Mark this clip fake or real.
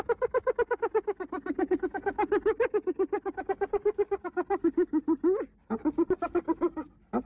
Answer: real